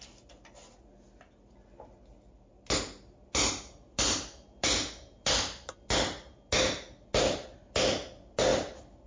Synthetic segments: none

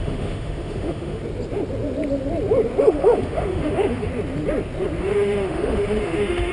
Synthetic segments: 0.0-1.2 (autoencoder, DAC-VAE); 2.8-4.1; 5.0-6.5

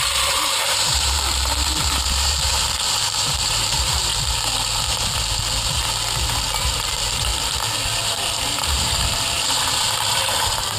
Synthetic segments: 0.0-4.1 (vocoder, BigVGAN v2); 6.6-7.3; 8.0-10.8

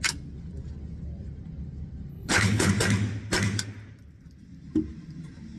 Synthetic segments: 2.1-2.7 (codec, HILCodec)

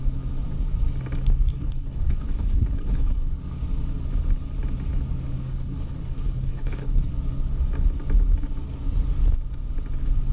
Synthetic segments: 1.5-3.4 (codec, HILCodec); 5.5-7.1

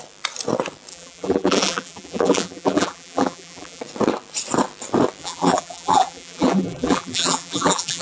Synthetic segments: 0.9-3.8 (vocoder, BigVGAN v2); 5.2-8.0